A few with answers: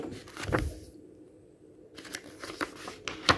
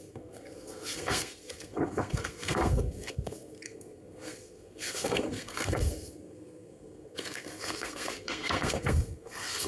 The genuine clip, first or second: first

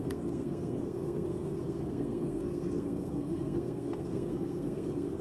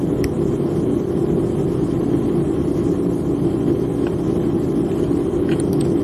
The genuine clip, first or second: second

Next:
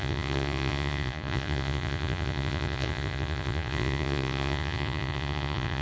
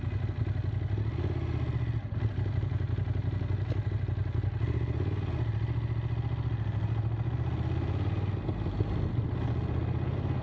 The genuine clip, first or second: second